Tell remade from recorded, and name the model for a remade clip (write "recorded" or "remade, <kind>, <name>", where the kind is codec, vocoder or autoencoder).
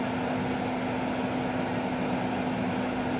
recorded